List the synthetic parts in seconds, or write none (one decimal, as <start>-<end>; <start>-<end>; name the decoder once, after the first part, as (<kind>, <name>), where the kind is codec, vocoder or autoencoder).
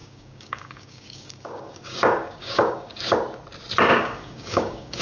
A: 0.0-3.0 (codec, DAC); 3.9-5.0